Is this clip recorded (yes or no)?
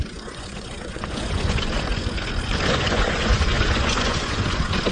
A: no